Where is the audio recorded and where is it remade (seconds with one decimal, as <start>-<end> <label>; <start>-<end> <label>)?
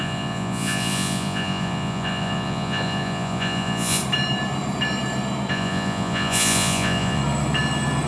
0.0-4.0 remade; 4.0-5.5 recorded; 5.5-7.2 remade; 7.2-8.1 recorded